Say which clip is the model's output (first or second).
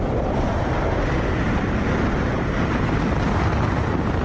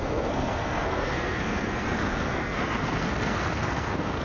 second